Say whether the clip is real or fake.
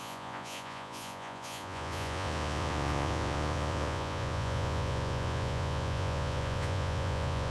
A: fake